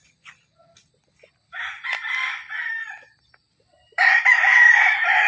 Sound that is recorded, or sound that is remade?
remade